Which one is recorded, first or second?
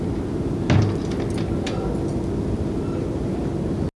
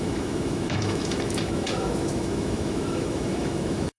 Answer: first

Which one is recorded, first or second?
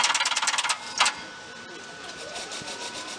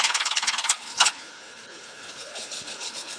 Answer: first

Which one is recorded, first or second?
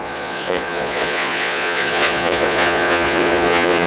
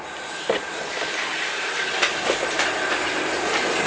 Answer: second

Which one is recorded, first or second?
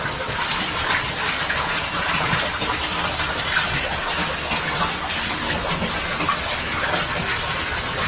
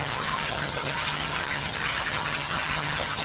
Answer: first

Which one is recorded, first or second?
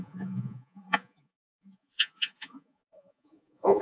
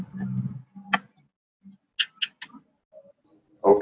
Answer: second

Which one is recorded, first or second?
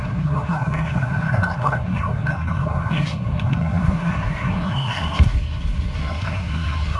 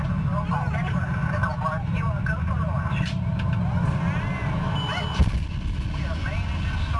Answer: second